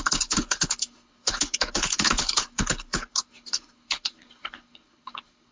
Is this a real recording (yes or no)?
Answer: no